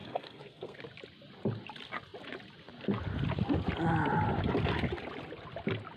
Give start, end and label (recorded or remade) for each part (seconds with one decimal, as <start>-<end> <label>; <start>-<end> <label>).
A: 0.0-0.8 remade; 0.8-6.0 recorded